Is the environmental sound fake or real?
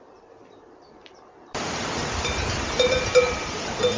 fake